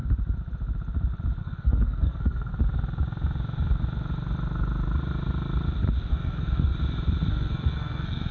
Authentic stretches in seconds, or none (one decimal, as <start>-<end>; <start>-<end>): 0.0-1.4; 2.5-6.1; 6.7-7.3

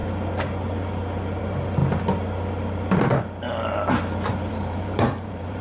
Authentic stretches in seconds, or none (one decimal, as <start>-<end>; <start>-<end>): 0.0-1.4; 1.8-4.5